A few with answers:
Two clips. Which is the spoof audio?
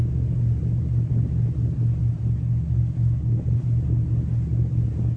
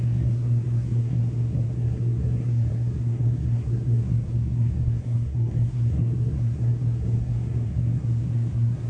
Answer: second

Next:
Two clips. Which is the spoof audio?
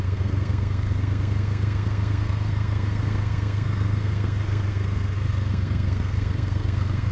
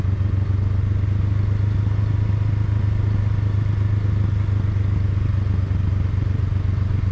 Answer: first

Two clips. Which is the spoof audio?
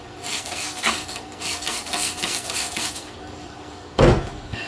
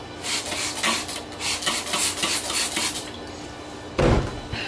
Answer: first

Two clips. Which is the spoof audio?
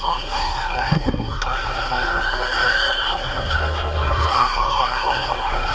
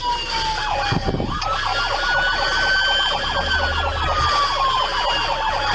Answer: first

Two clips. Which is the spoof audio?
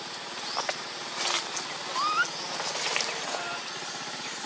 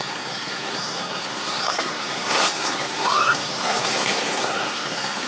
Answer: second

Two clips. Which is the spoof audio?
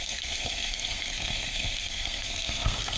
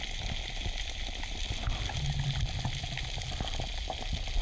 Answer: first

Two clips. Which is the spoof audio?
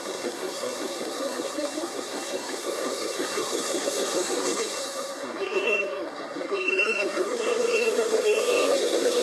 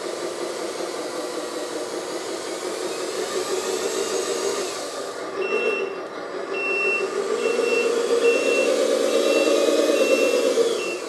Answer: first